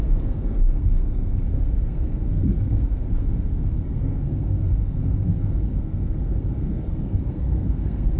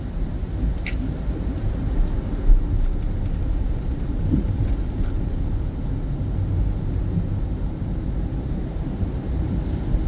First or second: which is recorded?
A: second